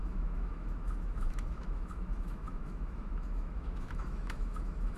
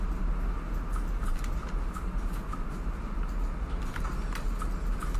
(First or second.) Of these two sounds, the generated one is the first